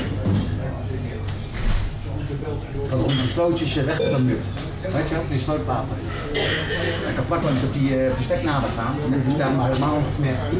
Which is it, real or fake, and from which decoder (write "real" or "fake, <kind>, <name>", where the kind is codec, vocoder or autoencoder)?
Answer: real